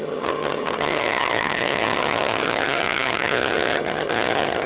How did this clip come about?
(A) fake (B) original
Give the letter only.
A